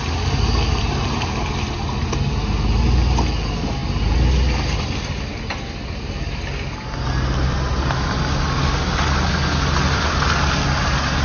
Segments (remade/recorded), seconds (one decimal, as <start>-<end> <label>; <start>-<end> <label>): 0.0-11.2 recorded